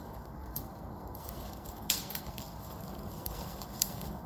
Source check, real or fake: fake